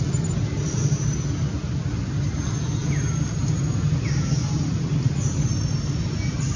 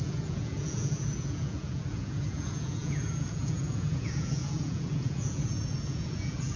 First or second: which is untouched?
first